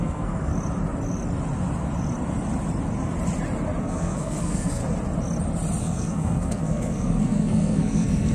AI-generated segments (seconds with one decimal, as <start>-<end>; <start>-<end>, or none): 0.0-0.5; 3.8-4.8; 5.8-8.3